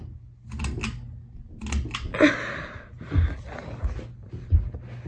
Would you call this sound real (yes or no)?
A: yes